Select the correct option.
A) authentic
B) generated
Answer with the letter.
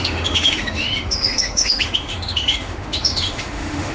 B